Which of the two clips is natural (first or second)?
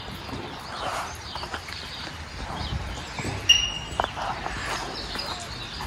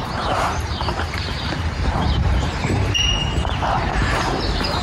first